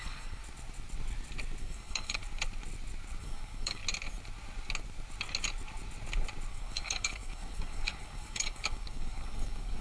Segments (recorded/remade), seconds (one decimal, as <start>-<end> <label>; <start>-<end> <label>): 0.0-0.4 remade; 0.4-1.6 recorded; 1.6-2.2 remade; 2.2-3.2 recorded; 3.2-3.8 remade; 3.8-6.5 recorded; 6.5-9.8 remade